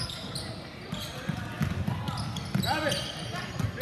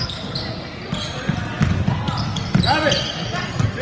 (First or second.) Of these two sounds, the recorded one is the second